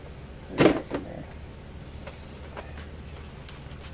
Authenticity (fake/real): real